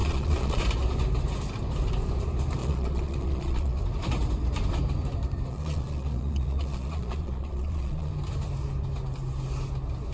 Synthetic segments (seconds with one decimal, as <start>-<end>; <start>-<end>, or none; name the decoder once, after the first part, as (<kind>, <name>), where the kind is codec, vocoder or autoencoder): 0.0-0.6 (vocoder, Vocos); 2.6-3.8; 5.5-8.1